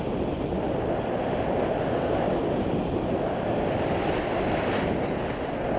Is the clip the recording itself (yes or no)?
yes